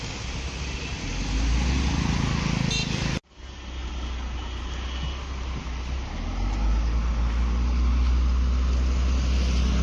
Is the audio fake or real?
real